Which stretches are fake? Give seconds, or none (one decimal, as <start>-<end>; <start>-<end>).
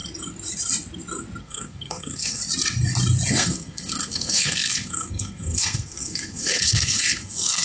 1.4-2.4; 3.3-7.6